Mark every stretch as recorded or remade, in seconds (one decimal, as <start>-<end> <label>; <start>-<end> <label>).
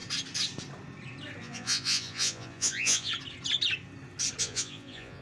0.0-1.4 recorded; 1.4-3.1 remade; 3.1-4.4 recorded; 4.4-5.2 remade